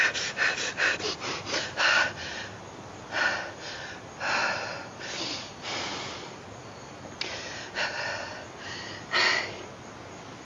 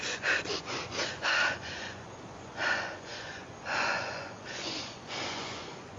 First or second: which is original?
first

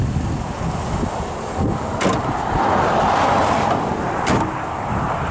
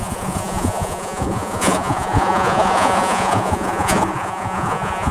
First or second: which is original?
first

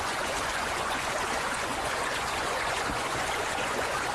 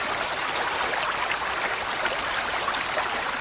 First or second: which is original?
second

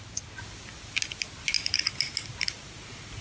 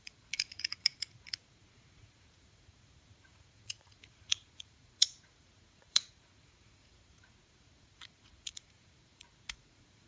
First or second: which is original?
first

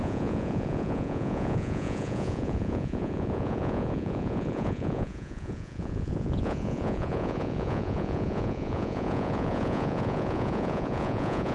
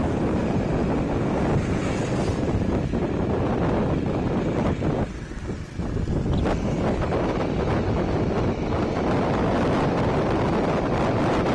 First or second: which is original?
second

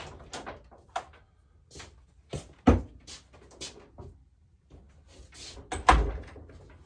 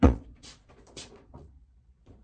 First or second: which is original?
first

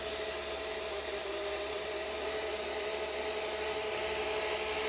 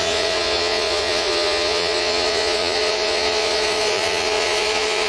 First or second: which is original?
first